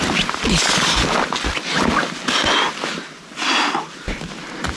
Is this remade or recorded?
recorded